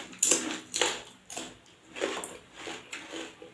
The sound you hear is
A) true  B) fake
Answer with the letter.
A